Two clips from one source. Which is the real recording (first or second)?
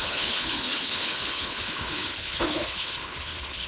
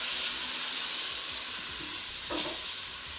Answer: second